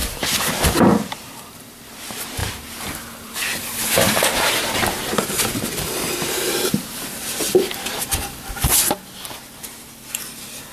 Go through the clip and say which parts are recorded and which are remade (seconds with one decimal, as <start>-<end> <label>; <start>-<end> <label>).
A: 0.0-1.8 remade; 1.8-2.4 recorded; 2.4-7.4 remade; 7.4-10.7 recorded